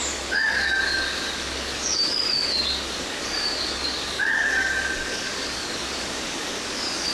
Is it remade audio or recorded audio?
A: remade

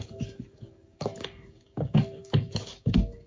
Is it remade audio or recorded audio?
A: remade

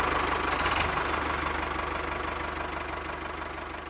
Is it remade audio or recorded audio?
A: recorded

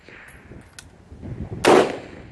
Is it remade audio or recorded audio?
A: recorded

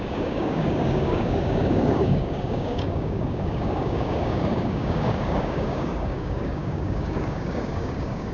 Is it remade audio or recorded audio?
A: remade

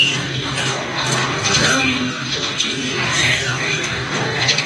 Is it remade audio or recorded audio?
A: remade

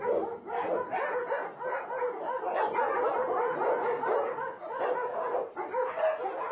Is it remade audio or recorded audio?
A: recorded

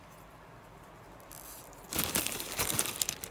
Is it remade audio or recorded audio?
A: recorded